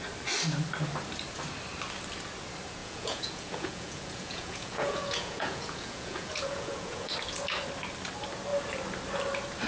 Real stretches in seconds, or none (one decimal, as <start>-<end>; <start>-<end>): 0.0-2.8; 7.1-9.7